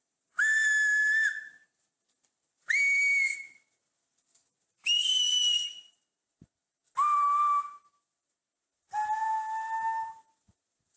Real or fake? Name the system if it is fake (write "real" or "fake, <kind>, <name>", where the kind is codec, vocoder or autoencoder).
real